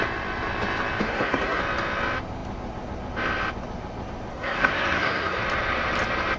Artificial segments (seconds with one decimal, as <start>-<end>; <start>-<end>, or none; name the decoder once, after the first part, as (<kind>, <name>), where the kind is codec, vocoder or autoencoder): 1.0-1.6 (codec, SNAC); 4.3-5.4